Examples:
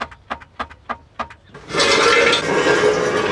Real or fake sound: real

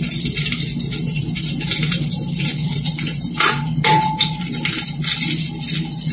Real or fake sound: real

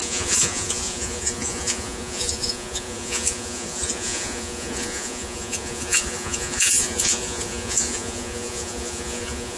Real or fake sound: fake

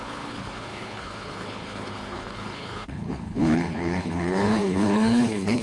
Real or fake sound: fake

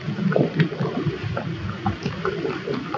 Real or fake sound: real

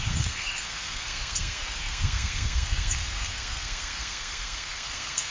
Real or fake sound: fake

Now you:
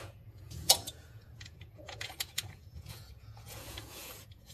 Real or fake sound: fake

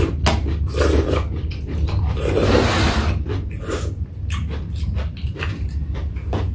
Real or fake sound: real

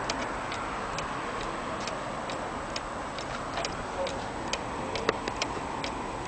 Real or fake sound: real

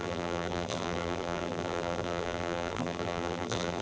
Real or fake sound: fake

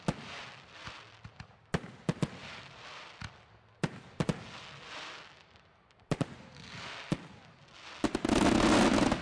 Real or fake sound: real